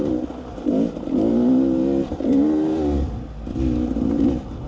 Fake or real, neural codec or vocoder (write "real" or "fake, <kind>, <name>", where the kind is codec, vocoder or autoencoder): real